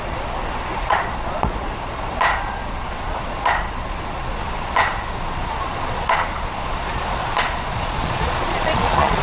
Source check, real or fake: fake